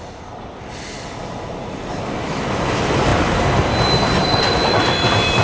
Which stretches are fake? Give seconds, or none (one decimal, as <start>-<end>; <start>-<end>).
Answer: none